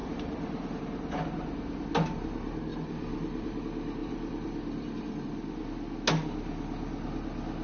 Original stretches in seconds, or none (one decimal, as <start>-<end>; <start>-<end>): 0.8-2.7; 3.6-4.0; 5.3-7.6